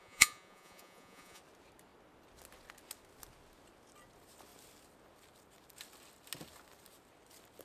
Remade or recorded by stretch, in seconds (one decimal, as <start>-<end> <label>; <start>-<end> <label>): 0.0-1.4 remade; 1.4-7.6 recorded